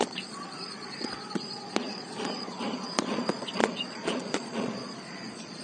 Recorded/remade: remade